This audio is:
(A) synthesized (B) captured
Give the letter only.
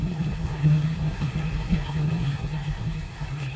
A